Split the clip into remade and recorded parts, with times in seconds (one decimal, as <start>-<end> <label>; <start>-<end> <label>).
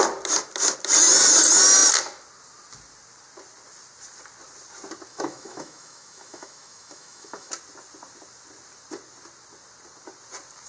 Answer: 0.0-5.1 recorded; 5.1-7.5 remade; 7.5-10.7 recorded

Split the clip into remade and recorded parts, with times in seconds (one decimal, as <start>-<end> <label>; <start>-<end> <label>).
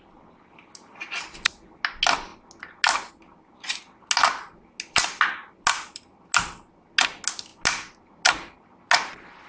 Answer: 0.0-9.5 recorded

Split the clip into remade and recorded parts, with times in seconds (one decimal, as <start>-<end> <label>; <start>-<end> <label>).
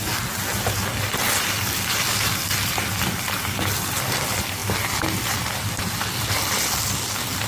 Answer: 0.0-7.5 recorded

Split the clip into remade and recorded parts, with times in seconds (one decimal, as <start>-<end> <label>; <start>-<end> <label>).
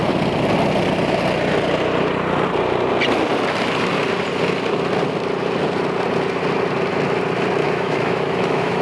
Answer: 0.0-7.6 recorded; 7.6-8.8 remade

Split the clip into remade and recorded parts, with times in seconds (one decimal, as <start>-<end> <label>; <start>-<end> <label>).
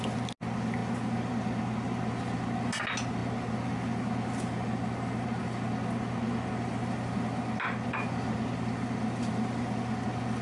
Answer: 0.0-10.4 recorded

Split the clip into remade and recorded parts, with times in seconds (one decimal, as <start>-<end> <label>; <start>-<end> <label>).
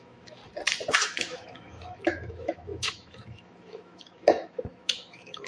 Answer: 0.0-0.4 remade; 0.4-0.9 recorded; 0.9-5.5 remade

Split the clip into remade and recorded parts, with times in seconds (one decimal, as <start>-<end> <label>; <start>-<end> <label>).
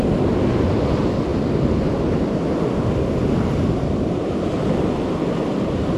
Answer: 0.0-6.0 recorded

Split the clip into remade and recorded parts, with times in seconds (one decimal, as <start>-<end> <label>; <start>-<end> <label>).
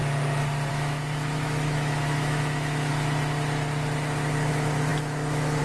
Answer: 0.0-0.7 recorded; 0.7-2.9 remade; 2.9-4.5 recorded; 4.5-5.6 remade